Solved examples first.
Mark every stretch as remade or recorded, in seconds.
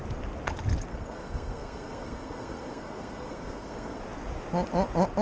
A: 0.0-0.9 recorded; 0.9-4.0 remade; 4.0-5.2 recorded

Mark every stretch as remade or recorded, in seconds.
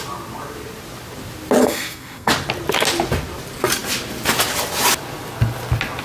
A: 0.0-1.6 recorded; 1.6-2.3 remade; 2.3-6.0 recorded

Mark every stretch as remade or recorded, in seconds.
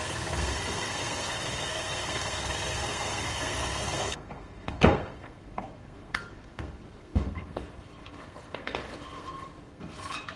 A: 0.0-10.4 remade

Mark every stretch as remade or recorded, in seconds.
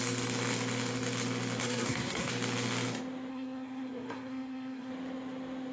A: 0.0-1.6 recorded; 1.6-2.3 remade; 2.3-3.3 recorded; 3.3-4.9 remade; 4.9-5.7 recorded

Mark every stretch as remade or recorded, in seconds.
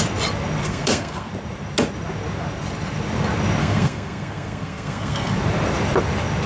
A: 0.0-0.6 recorded; 0.6-1.3 remade; 1.3-3.6 recorded; 3.6-5.3 remade; 5.3-6.5 recorded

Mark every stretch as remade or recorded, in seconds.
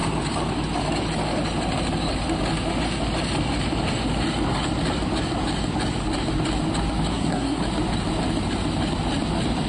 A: 0.0-7.1 recorded; 7.1-7.6 remade; 7.6-9.7 recorded